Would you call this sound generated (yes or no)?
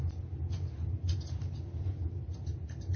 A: no